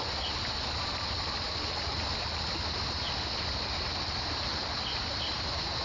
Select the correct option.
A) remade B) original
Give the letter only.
B